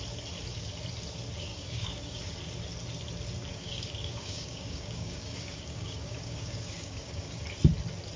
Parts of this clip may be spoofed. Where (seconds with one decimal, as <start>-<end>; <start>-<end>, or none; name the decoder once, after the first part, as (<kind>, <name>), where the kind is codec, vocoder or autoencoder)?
1.5-2.2 (codec, DAC); 3.5-7.4